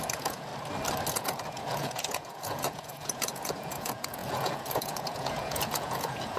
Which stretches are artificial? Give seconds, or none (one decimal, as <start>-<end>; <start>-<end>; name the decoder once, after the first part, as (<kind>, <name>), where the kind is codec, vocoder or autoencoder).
0.0-0.5 (vocoder, Vocos); 1.1-6.4